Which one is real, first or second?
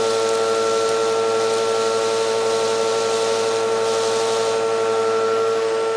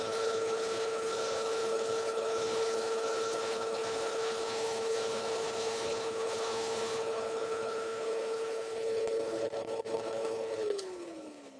first